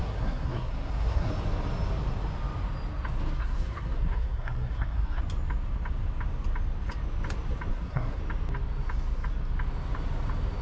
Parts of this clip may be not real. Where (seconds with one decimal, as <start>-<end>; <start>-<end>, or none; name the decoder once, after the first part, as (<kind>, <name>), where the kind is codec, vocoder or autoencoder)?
0.0-1.3 (codec, SNAC); 3.4-5.2; 7.7-8.2